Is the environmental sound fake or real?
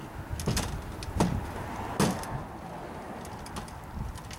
real